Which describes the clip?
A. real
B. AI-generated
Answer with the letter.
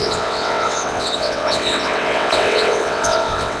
B